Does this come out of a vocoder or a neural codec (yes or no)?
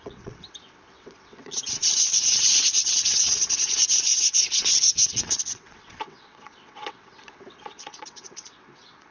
yes